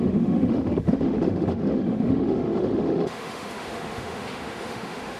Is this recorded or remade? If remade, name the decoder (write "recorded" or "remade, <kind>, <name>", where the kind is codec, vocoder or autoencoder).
remade, autoencoder, DAC-VAE